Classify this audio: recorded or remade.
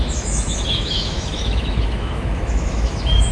remade